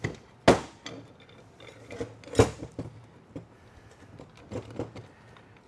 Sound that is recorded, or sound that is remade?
recorded